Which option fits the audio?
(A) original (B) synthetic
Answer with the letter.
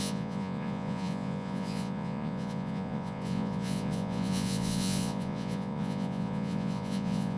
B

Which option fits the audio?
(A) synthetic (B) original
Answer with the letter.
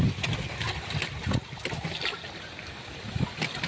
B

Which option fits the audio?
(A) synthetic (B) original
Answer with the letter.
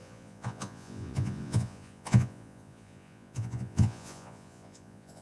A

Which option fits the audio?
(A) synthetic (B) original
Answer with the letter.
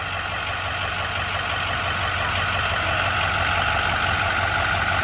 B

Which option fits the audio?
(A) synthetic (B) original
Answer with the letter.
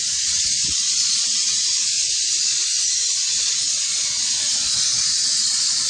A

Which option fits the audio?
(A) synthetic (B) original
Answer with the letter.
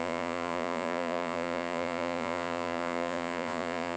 A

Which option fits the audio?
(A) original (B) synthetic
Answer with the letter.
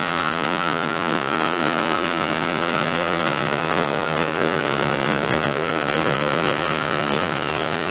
B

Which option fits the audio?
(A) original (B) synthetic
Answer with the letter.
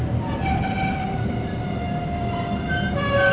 A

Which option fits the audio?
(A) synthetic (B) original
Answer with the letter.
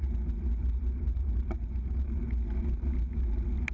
B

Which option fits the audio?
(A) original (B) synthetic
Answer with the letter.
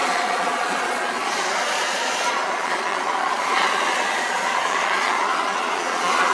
B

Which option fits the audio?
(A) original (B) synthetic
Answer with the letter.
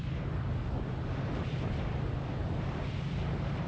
A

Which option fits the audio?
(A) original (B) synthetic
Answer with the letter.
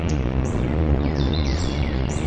B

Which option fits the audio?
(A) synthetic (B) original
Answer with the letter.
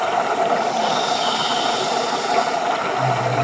B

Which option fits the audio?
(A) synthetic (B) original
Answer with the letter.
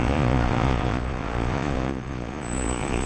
A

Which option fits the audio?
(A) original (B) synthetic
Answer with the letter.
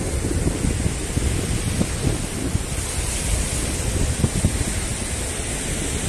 A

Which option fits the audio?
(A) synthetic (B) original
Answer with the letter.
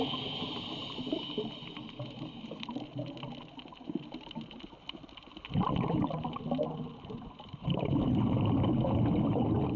B